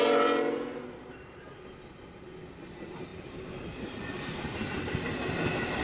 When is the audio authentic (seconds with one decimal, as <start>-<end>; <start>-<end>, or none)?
0.0-5.8